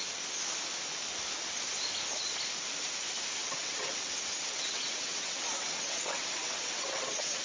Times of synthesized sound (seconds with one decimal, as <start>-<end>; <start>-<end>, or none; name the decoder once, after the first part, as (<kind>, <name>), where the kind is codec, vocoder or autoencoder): 3.4-7.4 (vocoder, WaveNeXt)